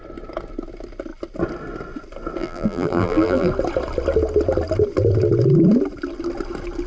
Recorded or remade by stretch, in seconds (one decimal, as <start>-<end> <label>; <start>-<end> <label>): 0.0-2.4 recorded; 2.4-3.5 remade; 3.5-6.9 recorded